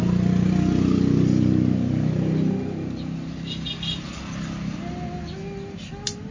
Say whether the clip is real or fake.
real